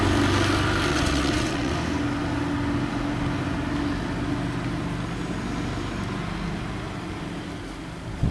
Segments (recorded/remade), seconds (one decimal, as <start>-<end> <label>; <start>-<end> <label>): 0.0-0.9 recorded; 0.9-1.7 remade; 1.7-8.3 recorded